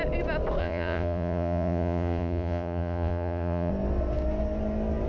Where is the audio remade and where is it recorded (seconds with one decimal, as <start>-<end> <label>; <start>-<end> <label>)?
0.0-0.6 recorded; 0.6-3.7 remade; 3.7-5.1 recorded